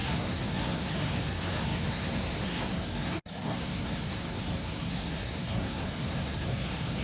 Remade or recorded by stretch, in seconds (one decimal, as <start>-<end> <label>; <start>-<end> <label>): 0.0-7.0 remade